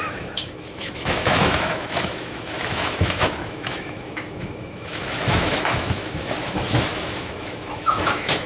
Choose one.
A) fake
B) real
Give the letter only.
A